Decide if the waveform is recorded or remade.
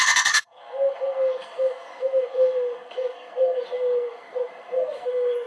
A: remade